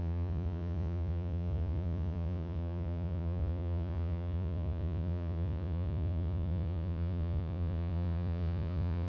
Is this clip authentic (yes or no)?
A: no